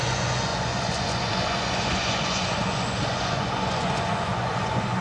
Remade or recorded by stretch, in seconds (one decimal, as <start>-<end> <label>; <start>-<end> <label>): 0.0-5.0 remade